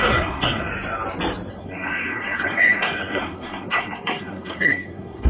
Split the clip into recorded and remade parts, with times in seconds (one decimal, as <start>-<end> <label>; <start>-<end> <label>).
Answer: 0.0-0.7 remade; 0.7-1.5 recorded; 1.5-5.3 remade